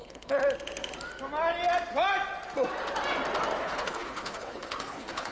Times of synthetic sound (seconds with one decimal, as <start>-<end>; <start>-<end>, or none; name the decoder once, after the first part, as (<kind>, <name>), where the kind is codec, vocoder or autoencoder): 0.0-0.4 (codec, HILCodec); 3.6-5.3